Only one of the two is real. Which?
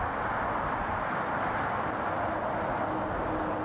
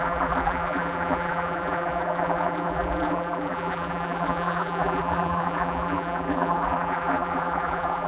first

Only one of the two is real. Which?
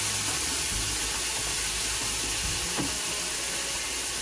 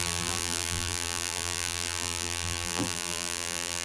first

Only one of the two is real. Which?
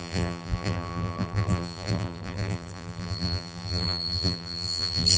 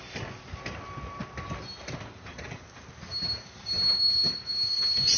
second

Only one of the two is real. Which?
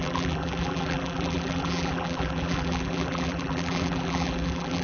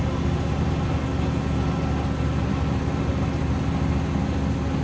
second